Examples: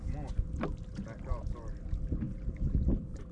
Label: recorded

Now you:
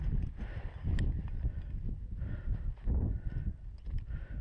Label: recorded